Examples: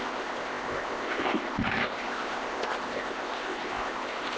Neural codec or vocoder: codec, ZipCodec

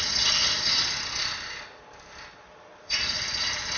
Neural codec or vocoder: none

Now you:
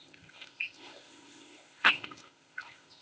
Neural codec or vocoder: codec, ZipCodec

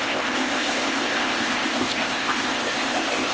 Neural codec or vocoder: codec, ZipCodec